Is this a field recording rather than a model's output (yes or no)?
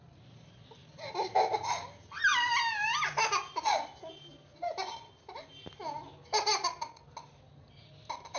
yes